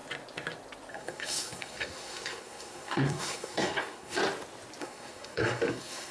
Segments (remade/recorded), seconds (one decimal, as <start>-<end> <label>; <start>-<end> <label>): 0.0-0.9 recorded; 0.9-4.2 remade; 4.2-4.8 recorded; 4.8-6.1 remade

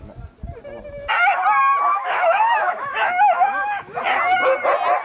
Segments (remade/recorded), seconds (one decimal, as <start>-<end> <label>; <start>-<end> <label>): 0.0-1.9 recorded; 1.9-4.0 remade; 4.0-5.0 recorded